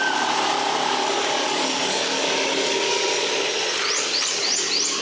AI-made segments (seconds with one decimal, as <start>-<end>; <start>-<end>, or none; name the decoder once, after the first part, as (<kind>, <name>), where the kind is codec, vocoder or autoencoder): 1.0-3.3 (codec, DAC)